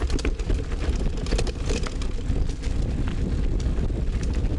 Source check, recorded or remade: recorded